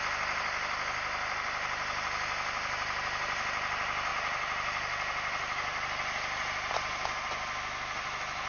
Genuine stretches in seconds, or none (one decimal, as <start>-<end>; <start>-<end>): 0.0-8.5